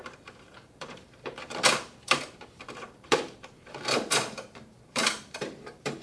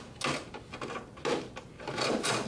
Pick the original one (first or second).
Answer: second